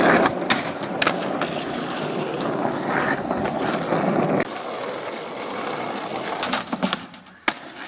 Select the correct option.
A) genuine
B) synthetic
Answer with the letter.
A